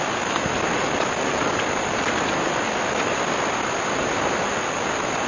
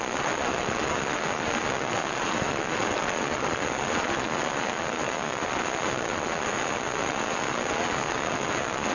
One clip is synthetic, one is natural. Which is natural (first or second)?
first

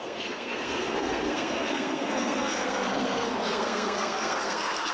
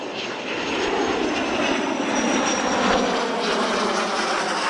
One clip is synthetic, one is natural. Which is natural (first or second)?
second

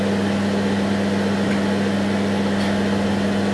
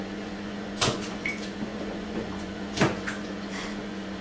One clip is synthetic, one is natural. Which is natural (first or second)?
first